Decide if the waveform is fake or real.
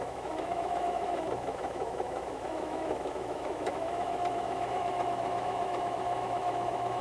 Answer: fake